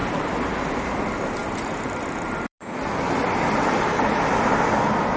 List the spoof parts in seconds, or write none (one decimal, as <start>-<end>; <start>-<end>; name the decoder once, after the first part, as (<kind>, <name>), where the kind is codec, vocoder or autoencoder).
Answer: 1.4-4.5 (vocoder, BigVGAN v2)